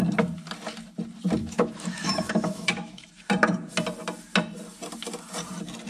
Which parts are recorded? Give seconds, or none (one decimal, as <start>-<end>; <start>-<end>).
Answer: 0.0-1.4; 3.1-5.9